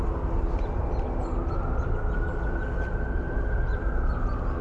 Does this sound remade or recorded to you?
recorded